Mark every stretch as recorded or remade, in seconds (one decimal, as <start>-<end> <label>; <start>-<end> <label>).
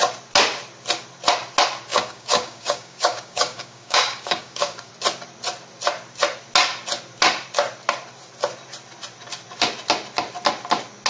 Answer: 0.0-1.9 recorded; 1.9-4.9 remade; 4.9-11.1 recorded